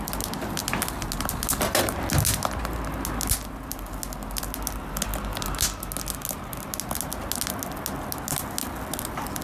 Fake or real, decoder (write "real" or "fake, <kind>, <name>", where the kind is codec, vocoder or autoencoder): real